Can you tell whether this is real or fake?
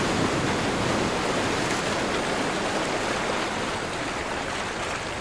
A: real